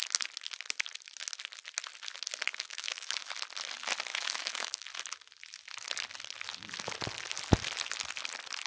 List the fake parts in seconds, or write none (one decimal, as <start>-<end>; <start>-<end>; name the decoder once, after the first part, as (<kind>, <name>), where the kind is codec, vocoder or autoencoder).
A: 2.5-3.3 (autoencoder, DAC-VAE); 4.1-4.9